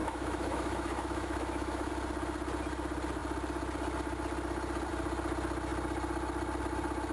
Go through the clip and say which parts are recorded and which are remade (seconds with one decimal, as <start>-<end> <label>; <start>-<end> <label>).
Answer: 0.0-1.9 remade; 1.9-7.1 recorded